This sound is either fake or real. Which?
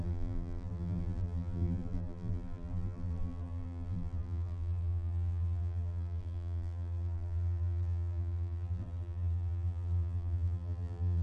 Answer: fake